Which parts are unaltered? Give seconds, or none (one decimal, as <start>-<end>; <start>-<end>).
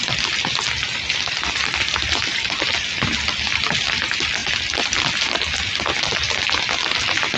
0.0-7.4